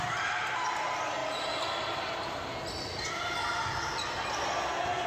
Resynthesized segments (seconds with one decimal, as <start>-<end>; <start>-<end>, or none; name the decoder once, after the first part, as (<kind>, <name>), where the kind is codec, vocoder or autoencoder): none